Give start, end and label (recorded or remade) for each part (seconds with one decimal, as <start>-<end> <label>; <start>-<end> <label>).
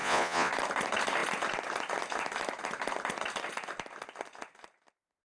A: 0.0-0.5 remade; 0.5-5.3 recorded